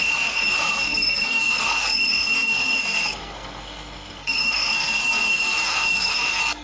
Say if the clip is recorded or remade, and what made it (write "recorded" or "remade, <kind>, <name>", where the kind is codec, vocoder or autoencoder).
remade, codec, SNAC